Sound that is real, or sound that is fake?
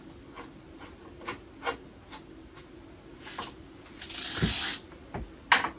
real